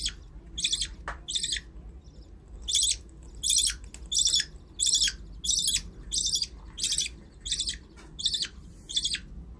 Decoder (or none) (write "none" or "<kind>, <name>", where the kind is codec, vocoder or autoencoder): none